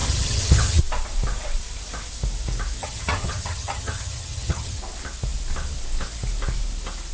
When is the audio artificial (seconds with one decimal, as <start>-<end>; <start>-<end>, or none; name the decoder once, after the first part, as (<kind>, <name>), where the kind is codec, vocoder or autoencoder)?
0.0-0.8 (vocoder, HiFi-GAN); 2.8-4.8